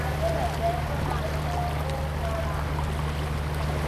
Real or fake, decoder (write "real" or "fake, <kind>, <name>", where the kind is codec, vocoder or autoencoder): real